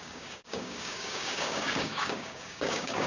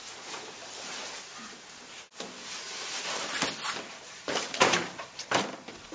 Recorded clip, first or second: second